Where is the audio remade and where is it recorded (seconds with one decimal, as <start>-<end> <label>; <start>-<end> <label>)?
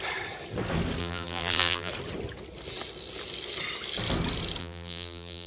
0.0-1.0 recorded; 1.0-1.9 remade; 1.9-4.6 recorded; 4.6-5.5 remade